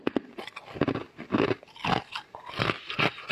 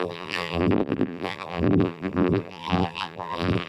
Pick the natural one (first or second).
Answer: first